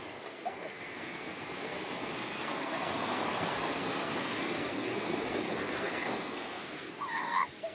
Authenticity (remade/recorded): remade